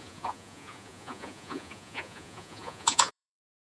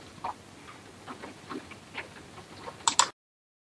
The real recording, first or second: second